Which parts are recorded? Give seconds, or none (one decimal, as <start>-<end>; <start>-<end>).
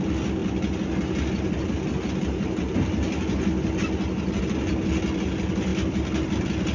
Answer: 0.0-6.7